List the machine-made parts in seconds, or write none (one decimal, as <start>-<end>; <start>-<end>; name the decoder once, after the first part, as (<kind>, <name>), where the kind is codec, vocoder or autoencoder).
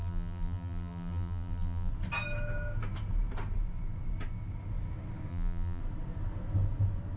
0.0-1.9 (vocoder, BigVGAN v2); 5.3-5.8